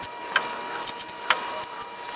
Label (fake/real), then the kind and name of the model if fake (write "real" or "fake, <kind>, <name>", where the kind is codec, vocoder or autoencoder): real